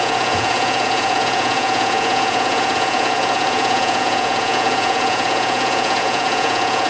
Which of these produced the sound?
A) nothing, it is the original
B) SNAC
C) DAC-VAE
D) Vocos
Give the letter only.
D